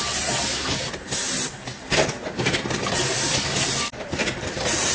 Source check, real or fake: real